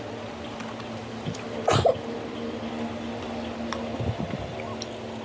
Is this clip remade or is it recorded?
recorded